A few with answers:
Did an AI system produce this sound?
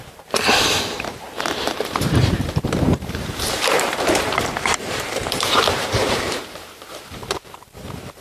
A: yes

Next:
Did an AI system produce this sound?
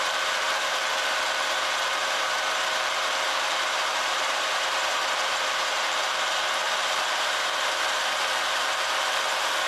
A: yes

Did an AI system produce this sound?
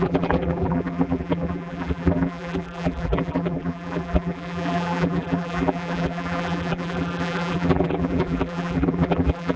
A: yes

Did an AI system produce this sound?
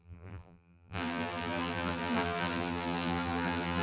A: yes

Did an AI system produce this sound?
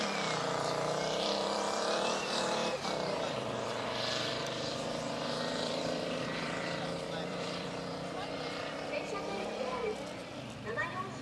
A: yes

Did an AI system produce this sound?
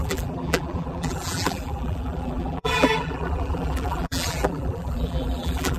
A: yes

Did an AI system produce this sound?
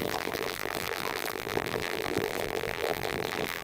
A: yes